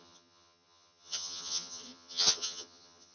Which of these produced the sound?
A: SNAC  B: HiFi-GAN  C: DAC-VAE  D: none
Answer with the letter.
B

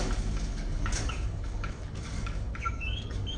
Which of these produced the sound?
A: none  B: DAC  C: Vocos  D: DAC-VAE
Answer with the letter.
B